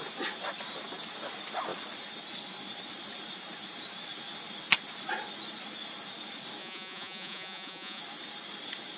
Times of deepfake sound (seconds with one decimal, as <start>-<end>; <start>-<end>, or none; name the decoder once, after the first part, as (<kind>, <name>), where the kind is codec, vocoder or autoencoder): 6.6-8.0 (vocoder, Vocos)